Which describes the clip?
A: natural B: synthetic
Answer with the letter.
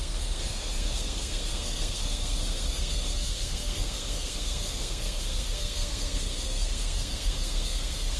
B